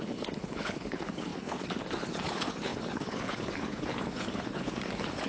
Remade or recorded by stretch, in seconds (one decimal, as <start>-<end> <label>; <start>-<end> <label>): 0.0-5.3 remade